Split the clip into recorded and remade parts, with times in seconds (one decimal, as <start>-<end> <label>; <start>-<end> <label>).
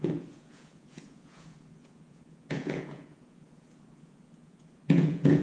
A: 0.0-5.4 remade